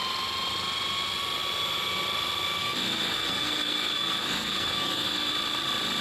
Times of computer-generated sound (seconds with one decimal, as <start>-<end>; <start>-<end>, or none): 2.6-5.3